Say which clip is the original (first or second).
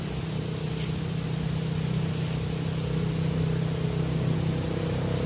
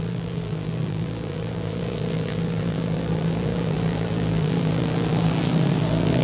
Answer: first